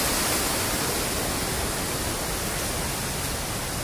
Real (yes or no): yes